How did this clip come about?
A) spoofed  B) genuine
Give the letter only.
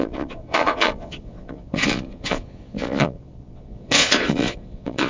A